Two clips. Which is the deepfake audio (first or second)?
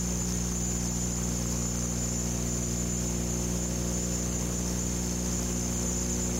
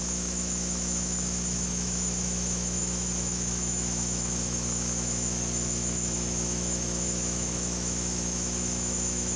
second